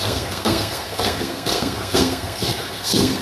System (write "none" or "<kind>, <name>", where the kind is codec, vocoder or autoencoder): codec, SNAC